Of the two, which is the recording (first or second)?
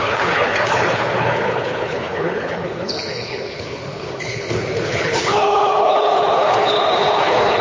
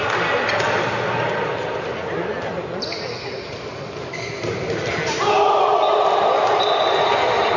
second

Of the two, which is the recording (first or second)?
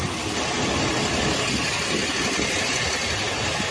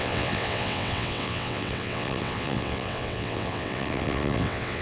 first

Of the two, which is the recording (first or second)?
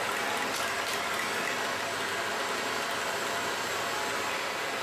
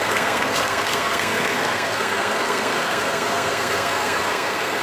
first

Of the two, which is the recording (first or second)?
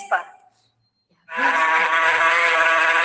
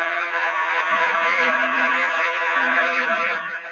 first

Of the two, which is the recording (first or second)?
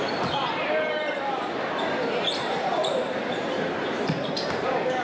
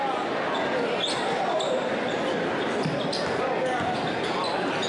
second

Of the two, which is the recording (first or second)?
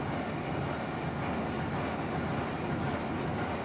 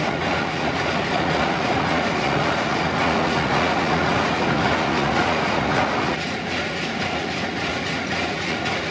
first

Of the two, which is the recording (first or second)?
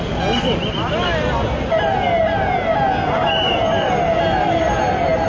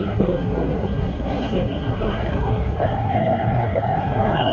first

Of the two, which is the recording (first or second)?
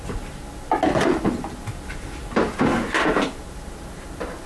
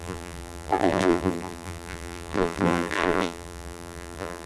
first